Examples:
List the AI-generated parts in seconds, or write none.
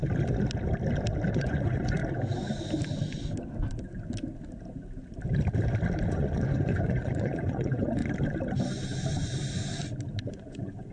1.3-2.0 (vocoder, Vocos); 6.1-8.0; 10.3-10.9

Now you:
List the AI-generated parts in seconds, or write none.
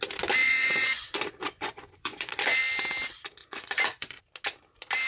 0.4-2.6 (vocoder, Vocos); 3.4-4.2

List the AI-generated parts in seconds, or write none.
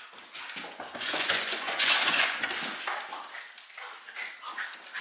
0.9-2.4 (vocoder, Vocos)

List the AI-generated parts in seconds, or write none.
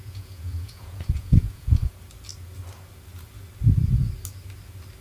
0.0-1.9 (vocoder, Vocos)